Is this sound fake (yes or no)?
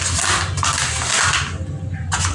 no